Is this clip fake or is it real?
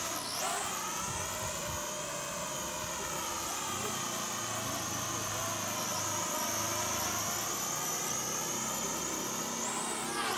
real